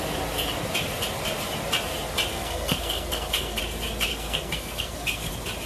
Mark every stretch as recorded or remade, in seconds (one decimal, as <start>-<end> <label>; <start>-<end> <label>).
0.0-2.3 recorded; 2.3-3.6 remade; 3.6-4.1 recorded; 4.1-5.3 remade; 5.3-5.7 recorded